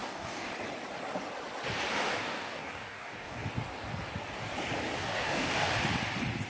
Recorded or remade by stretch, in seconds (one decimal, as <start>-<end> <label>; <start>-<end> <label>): 0.0-0.5 remade; 0.5-2.2 recorded; 2.2-3.5 remade; 3.5-5.0 recorded; 5.0-5.7 remade; 5.7-6.5 recorded